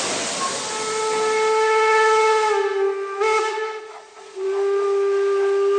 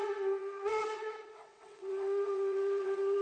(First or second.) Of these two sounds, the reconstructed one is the second